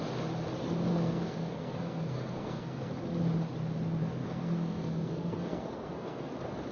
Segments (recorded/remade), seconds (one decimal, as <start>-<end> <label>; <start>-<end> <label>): 0.0-0.9 recorded; 0.9-3.0 remade; 3.0-4.0 recorded; 4.0-6.3 remade; 6.3-6.7 recorded